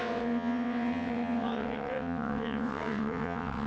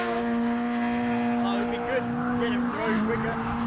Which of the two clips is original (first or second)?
second